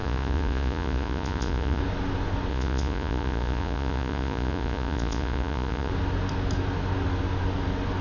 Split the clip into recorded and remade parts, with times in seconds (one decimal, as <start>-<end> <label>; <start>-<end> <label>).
0.0-1.8 remade; 1.8-2.5 recorded; 2.5-5.9 remade; 5.9-8.0 recorded